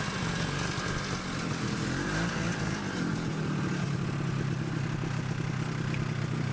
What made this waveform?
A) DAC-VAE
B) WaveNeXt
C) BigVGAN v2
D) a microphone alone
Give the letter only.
D